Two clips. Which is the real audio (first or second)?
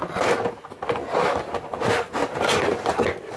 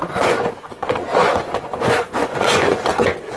first